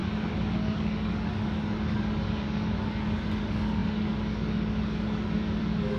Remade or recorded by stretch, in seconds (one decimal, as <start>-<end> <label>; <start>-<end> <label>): 0.0-6.0 remade